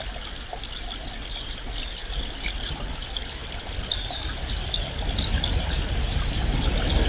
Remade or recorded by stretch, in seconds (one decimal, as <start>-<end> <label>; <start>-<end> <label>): 0.0-7.1 recorded